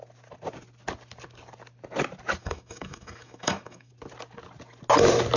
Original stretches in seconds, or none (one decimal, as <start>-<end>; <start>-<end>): 0.0-2.4; 3.9-5.4